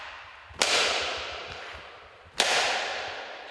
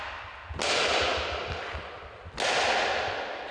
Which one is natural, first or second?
second